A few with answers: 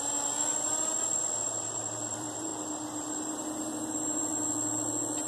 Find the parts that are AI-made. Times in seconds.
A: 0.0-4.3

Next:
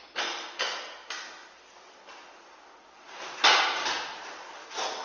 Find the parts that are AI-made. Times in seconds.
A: none

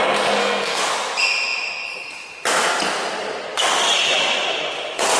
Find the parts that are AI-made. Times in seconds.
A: 0.4-0.9

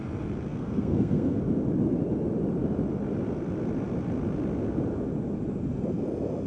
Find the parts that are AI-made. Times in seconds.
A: 0.5-1.4

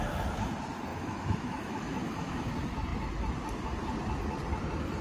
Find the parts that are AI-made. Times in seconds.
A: 0.9-2.5

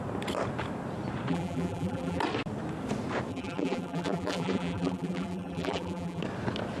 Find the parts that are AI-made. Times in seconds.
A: 1.3-2.2; 3.3-6.2

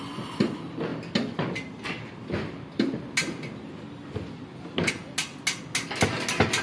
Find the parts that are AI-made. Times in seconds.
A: none